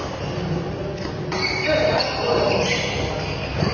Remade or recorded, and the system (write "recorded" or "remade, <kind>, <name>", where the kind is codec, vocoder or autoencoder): recorded